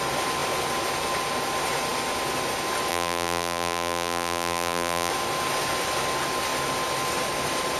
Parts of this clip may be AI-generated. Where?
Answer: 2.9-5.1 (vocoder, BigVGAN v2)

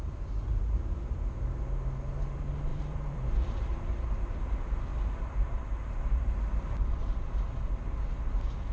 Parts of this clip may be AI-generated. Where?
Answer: 2.7-3.9 (vocoder, BigVGAN v2); 4.9-6.9

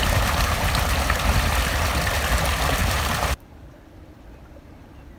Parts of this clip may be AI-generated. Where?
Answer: 2.8-3.8 (vocoder, BigVGAN v2)